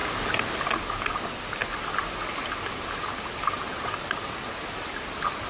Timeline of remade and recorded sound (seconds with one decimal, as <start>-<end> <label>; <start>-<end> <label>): 0.0-5.5 recorded